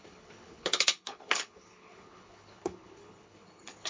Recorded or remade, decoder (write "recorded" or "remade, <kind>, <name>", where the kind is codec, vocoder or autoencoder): remade, codec, HILCodec